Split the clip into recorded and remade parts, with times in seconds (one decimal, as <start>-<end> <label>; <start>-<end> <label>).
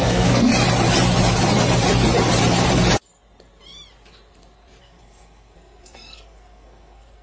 0.0-0.5 remade; 0.5-4.8 recorded; 4.8-7.2 remade